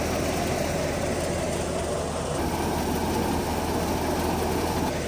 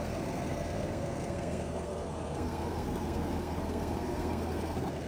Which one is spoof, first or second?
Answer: second